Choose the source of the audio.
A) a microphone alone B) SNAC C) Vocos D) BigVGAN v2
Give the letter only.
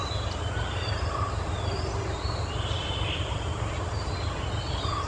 A